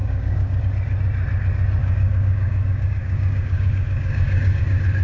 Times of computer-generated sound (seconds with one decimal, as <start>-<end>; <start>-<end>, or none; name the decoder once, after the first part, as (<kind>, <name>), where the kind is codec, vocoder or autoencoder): 0.0-0.6 (codec, DAC); 1.8-4.6